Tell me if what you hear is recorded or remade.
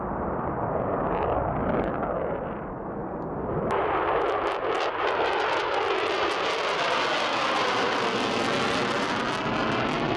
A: recorded